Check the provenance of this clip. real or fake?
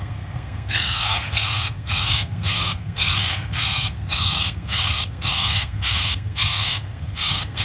fake